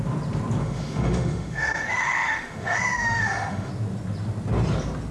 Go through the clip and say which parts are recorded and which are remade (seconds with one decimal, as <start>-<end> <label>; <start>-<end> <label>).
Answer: 0.0-0.6 recorded; 0.6-3.7 remade; 3.7-5.1 recorded